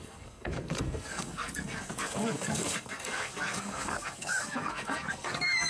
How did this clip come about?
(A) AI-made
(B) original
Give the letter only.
A